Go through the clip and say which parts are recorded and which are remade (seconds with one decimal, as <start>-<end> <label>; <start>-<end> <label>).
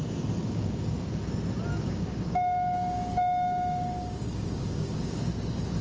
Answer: 0.0-0.4 recorded; 0.4-1.2 remade; 1.2-1.7 recorded; 1.7-5.2 remade; 5.2-5.8 recorded